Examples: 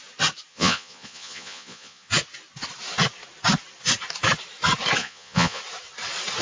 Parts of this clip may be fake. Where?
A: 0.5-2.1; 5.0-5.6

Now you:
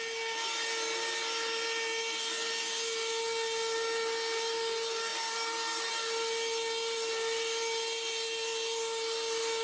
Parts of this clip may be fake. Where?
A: none

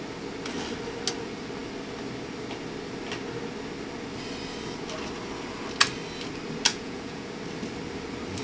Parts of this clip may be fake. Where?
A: 6.7-7.4

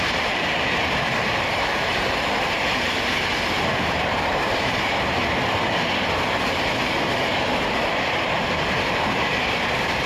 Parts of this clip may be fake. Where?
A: 0.0-5.2; 6.3-10.1

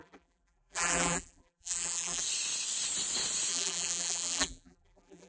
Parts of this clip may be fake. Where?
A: 0.0-2.2; 3.5-5.3

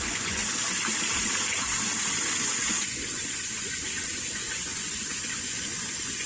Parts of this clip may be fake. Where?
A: 0.0-0.4; 2.4-6.3

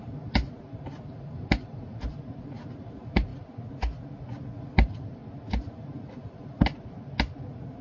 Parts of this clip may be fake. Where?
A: 0.0-3.3; 4.6-5.2; 5.7-6.6